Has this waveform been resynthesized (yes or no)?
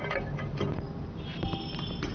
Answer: no